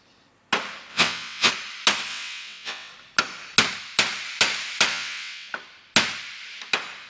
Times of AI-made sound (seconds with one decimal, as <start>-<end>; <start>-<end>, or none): 0.9-1.5; 2.1-2.9; 4.9-5.5